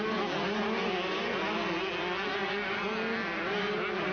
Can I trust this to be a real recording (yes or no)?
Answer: yes